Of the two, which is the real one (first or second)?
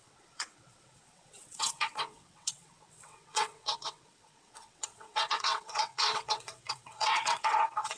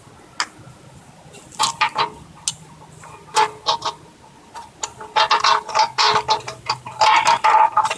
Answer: second